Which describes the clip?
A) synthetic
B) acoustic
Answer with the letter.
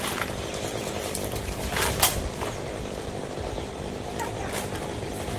B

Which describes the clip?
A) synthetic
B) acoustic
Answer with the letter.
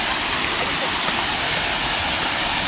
B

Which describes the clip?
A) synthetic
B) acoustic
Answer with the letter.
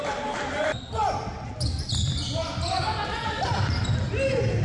B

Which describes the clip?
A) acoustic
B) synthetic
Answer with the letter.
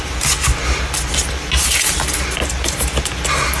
A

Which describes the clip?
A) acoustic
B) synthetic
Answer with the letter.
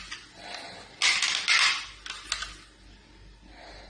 A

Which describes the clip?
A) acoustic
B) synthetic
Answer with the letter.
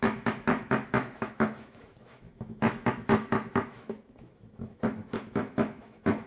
B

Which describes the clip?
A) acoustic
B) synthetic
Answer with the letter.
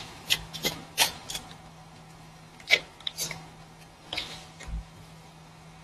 B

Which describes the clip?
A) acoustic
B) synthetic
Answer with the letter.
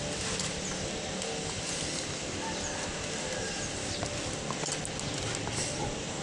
A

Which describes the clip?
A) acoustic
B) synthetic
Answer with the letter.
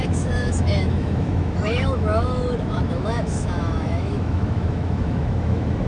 B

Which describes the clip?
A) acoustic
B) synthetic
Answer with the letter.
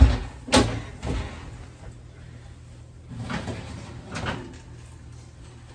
A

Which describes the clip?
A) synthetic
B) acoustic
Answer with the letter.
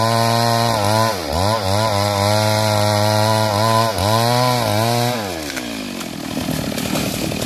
B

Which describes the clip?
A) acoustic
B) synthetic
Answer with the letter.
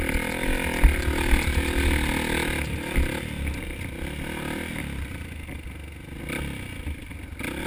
A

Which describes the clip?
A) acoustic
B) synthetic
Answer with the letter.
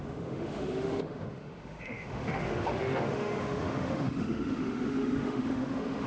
B